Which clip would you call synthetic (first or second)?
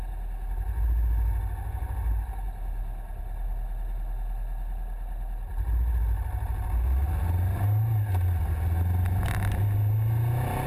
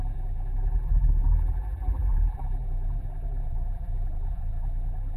second